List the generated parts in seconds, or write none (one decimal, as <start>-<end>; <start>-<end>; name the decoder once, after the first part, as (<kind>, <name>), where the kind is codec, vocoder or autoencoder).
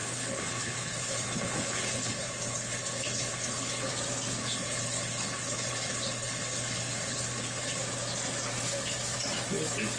0.0-3.9 (codec, HILCodec); 4.4-7.8